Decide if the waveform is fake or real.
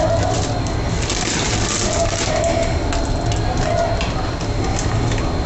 real